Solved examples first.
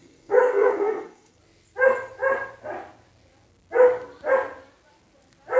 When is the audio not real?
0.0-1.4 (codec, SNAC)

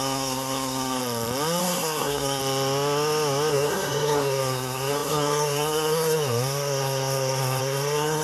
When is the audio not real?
0.0-1.0 (codec, SNAC); 1.6-2.4; 3.5-8.2

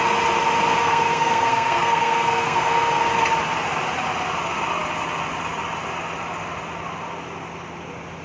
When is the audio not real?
0.8-3.1 (codec, SNAC)

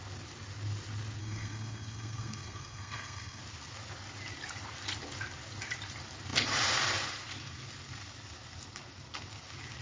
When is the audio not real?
1.2-3.4 (codec, SNAC)

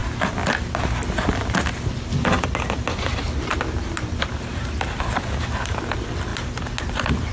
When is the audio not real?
none

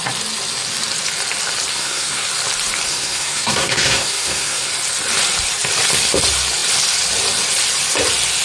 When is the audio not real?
1.7-2.2 (codec, SNAC); 2.9-4.7

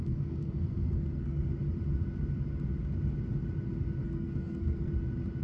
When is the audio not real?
0.0-1.5 (codec, SNAC); 4.0-4.9